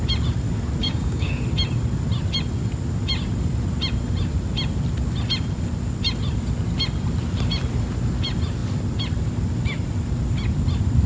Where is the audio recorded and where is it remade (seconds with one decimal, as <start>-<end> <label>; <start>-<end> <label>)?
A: 0.0-0.8 recorded; 0.8-1.4 remade; 1.4-11.1 recorded